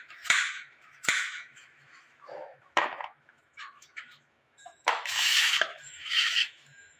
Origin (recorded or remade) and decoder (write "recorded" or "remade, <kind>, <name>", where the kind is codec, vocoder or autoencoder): remade, autoencoder, DAC-VAE